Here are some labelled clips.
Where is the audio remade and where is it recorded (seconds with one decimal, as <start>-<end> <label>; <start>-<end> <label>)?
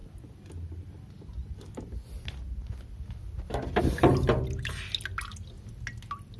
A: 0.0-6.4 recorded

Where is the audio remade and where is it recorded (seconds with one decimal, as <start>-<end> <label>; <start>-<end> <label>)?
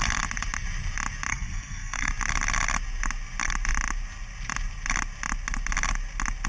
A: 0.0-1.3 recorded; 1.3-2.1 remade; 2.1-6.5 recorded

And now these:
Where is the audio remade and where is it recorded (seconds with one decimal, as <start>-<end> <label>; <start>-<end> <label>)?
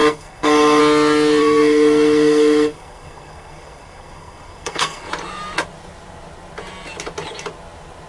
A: 0.0-0.8 remade; 0.8-1.4 recorded; 1.4-5.1 remade; 5.1-8.1 recorded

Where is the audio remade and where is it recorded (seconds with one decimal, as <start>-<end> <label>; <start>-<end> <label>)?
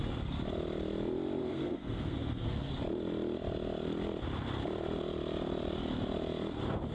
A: 0.0-1.4 recorded; 1.4-2.7 remade; 2.7-6.9 recorded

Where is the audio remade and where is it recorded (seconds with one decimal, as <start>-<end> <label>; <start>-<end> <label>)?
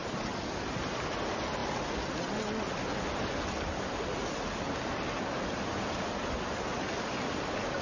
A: 0.0-7.8 recorded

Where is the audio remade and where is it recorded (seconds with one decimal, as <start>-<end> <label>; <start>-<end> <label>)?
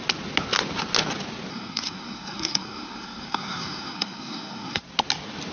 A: 0.0-1.5 recorded; 1.5-4.8 remade; 4.8-5.5 recorded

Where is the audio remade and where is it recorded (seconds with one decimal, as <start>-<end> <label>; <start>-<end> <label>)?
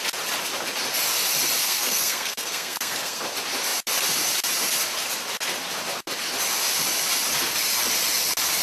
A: 0.0-1.6 recorded; 1.6-3.2 remade; 3.2-8.6 recorded